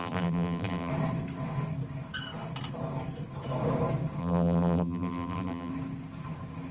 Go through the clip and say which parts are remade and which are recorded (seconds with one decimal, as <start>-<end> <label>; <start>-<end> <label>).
0.0-0.9 remade; 0.9-4.2 recorded; 4.2-5.7 remade; 5.7-6.7 recorded

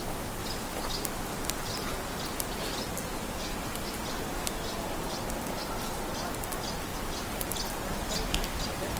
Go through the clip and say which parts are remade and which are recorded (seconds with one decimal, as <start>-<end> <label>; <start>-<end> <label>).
0.0-9.0 recorded

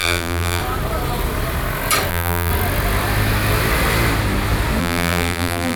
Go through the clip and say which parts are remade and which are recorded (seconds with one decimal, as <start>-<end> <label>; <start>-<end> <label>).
0.0-0.6 remade; 0.6-2.1 recorded; 2.1-2.5 remade; 2.5-4.8 recorded; 4.8-5.8 remade

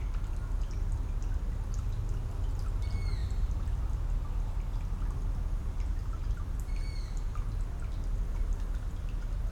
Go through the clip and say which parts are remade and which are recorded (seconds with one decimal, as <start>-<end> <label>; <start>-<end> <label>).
0.0-3.2 recorded; 3.2-3.9 remade; 3.9-5.6 recorded; 5.6-9.5 remade

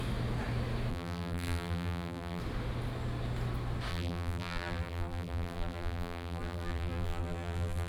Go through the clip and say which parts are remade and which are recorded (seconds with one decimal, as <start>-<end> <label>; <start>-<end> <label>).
0.0-0.9 recorded; 0.9-2.4 remade; 2.4-3.9 recorded; 3.9-7.9 remade

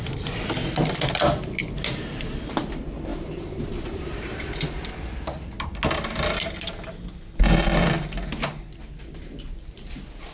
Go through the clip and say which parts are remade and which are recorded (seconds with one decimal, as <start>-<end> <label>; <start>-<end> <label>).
0.0-3.1 recorded; 3.1-4.9 remade; 4.9-10.3 recorded